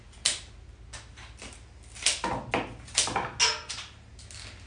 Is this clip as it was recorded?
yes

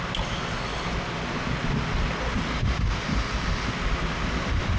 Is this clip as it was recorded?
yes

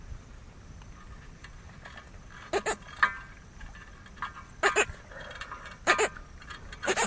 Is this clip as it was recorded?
yes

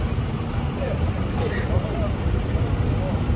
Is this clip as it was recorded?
yes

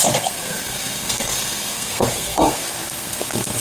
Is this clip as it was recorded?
no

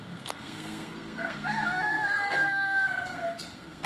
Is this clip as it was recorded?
no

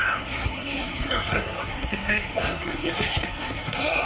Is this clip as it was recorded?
no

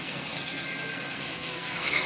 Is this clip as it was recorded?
no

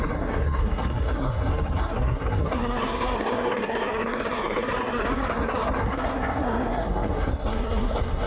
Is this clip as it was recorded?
no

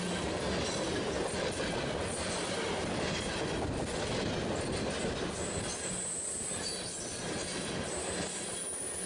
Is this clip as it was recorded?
yes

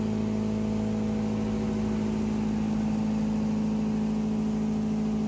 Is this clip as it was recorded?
yes